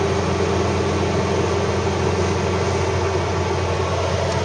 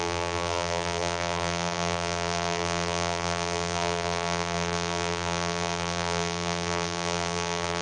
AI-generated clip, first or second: second